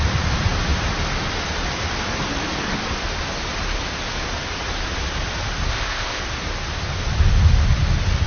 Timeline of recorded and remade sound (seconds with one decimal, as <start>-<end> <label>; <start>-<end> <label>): 0.0-5.7 recorded; 5.7-6.2 remade; 6.2-8.3 recorded